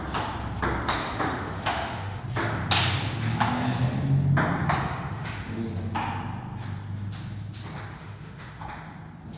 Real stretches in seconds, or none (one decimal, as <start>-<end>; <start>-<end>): 0.0-1.0; 2.2-4.8; 5.6-8.0; 8.7-9.4

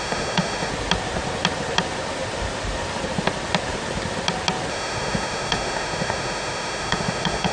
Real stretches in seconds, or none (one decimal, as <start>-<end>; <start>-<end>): 0.7-4.7

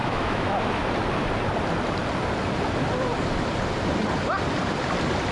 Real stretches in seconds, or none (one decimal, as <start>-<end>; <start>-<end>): 0.6-5.3

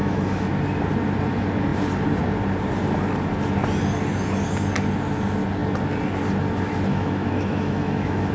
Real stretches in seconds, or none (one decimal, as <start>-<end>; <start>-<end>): 0.5-6.9

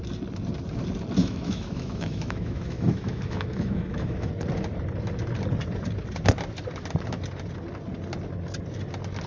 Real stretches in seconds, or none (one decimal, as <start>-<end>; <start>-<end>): 0.0-1.2; 4.3-9.3